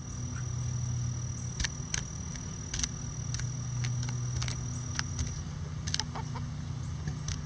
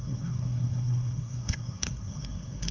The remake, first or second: second